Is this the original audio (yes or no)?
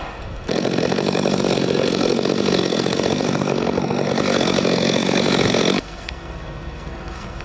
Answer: no